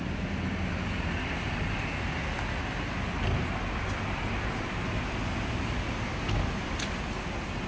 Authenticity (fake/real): real